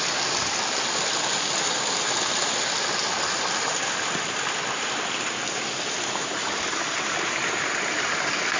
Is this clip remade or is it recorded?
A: recorded